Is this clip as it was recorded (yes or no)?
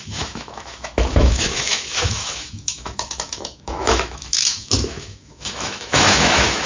no